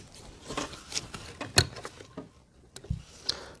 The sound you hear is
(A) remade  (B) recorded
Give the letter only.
B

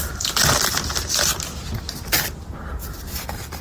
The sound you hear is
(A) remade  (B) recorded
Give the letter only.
B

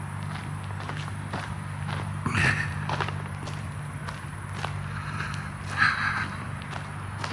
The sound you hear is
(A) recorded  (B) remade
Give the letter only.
A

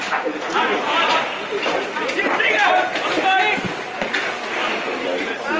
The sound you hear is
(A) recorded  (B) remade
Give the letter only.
A